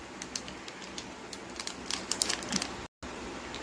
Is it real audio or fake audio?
real